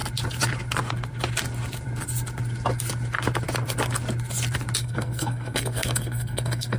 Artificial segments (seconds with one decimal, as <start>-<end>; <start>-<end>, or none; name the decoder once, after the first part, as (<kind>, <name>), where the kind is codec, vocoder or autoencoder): 4.8-6.8 (codec, SNAC)